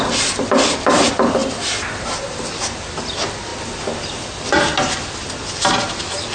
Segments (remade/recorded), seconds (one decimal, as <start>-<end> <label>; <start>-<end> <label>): 0.0-6.3 recorded